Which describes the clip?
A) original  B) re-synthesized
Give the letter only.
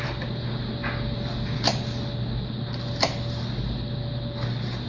A